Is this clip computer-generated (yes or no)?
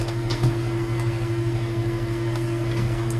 yes